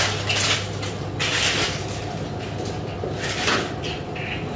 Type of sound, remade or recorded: recorded